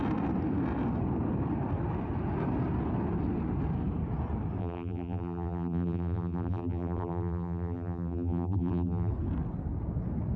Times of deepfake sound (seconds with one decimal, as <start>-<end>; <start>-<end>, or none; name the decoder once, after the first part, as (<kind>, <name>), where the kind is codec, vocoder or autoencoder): 4.6-9.1 (vocoder, BigVGAN v2)